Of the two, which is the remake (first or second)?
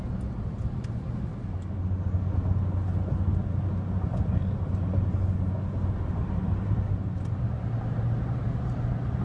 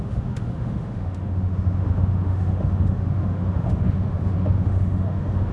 second